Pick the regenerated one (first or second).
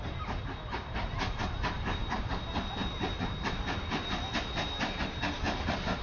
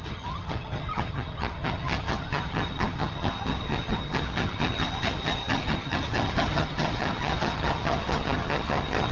second